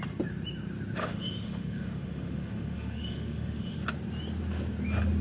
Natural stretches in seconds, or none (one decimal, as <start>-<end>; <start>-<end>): 0.0-1.0; 3.8-5.2